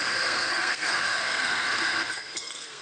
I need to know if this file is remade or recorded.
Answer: remade